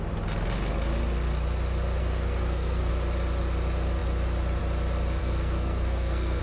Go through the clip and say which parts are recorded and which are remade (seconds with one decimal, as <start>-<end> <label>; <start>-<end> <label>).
0.0-2.0 recorded; 2.0-2.9 remade; 2.9-5.2 recorded; 5.2-6.4 remade